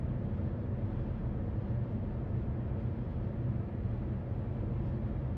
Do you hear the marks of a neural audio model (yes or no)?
no